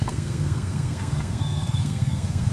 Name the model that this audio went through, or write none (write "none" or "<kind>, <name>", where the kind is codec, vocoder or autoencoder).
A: codec, SNAC